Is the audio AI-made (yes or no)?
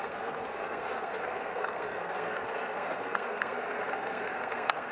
yes